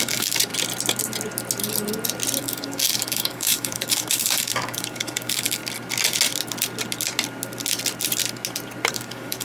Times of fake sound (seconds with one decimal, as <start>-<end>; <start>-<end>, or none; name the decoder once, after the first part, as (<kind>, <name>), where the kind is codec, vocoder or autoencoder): 0.0-0.5 (codec, DAC); 2.4-5.6; 8.9-9.4